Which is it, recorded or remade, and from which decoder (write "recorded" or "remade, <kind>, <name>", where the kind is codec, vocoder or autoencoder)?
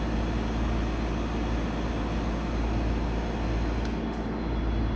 recorded